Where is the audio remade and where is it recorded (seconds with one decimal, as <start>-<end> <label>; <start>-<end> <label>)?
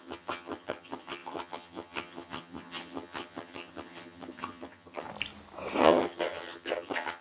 0.0-5.1 remade; 5.1-5.8 recorded; 5.8-7.2 remade